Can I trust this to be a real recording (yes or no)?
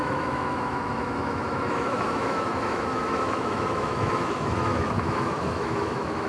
no